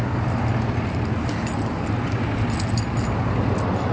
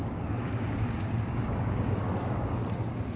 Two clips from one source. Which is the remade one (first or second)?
second